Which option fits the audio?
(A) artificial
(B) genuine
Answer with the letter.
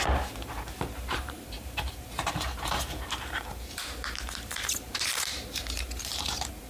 A